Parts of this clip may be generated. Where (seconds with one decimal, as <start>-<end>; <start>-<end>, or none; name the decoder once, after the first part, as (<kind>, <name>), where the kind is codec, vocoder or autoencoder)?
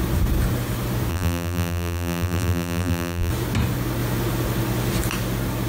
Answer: 1.1-3.3 (vocoder, BigVGAN v2)